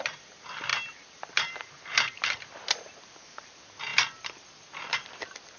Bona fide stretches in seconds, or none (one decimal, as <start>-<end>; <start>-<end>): none